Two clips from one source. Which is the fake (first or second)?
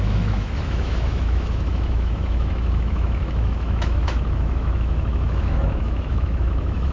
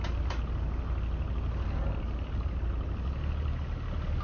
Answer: first